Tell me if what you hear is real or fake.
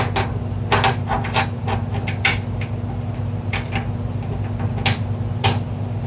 real